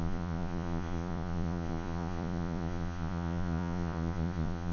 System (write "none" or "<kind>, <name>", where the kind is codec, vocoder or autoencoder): vocoder, Vocos